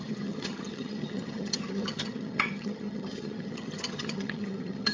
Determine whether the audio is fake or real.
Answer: fake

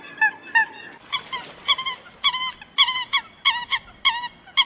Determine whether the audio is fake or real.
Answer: real